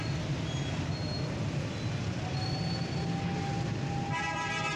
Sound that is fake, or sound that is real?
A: real